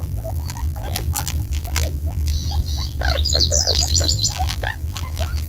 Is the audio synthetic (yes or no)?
yes